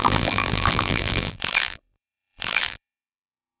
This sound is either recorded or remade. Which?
remade